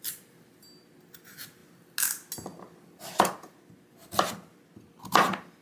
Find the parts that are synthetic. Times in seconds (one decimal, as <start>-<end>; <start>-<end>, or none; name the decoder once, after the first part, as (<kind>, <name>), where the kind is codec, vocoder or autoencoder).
none